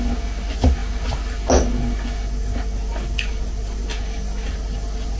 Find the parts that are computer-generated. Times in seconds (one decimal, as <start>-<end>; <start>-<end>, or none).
none

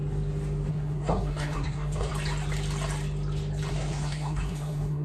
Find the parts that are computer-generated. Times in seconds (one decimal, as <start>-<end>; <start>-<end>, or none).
0.7-2.1; 3.7-5.0

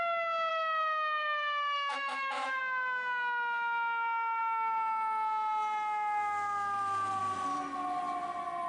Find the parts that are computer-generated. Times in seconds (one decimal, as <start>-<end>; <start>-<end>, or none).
0.5-2.6

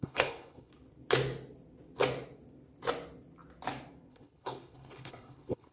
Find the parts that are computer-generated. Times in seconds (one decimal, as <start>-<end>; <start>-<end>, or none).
0.0-0.7; 4.1-5.7